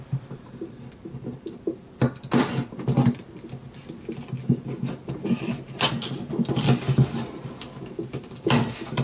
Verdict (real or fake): real